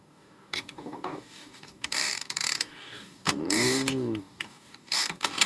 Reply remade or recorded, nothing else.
remade